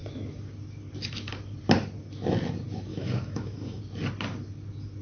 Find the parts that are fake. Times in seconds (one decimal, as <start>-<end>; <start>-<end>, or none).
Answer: 2.9-3.8

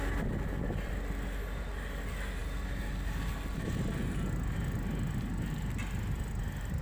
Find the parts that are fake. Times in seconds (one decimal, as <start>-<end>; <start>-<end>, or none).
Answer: none

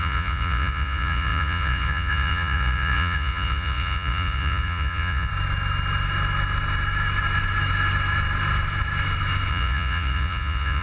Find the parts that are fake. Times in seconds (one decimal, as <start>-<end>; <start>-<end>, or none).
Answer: 0.0-5.3; 9.5-10.8